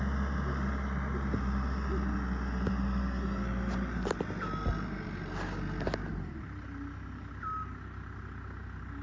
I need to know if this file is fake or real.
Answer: real